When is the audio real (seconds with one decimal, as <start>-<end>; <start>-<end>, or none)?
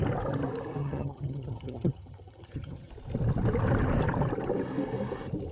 0.0-0.8; 2.9-5.5